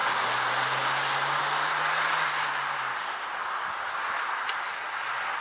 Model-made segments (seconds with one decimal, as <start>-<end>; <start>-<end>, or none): none